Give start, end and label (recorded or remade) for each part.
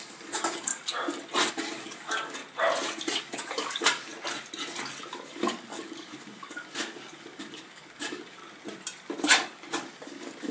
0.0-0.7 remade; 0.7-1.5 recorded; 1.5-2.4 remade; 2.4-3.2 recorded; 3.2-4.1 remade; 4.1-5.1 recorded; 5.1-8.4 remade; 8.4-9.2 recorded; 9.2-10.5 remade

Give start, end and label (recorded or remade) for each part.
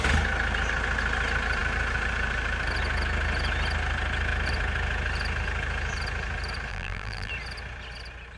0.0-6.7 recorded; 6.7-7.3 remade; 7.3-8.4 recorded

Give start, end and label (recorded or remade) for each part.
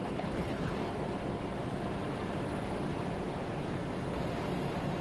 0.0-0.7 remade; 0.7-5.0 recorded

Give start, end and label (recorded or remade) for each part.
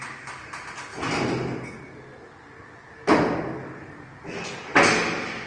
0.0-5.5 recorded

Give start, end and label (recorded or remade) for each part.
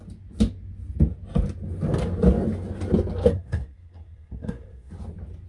0.0-3.3 recorded; 3.3-4.9 remade; 4.9-5.5 recorded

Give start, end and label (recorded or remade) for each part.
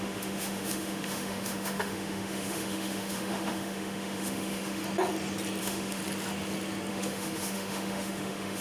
0.0-4.8 remade; 4.8-5.6 recorded; 5.6-6.0 remade; 6.0-6.9 recorded; 6.9-8.6 remade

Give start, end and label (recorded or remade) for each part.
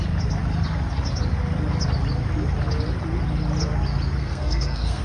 0.0-4.2 recorded; 4.2-5.0 remade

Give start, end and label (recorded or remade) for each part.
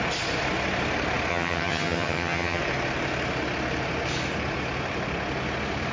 0.0-1.3 recorded; 1.3-2.6 remade; 2.6-5.9 recorded